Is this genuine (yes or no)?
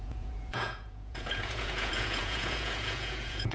no